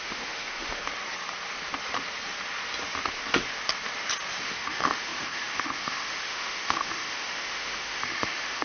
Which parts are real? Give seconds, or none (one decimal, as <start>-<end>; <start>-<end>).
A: 0.8-4.4